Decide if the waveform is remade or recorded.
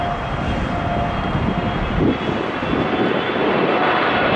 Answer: recorded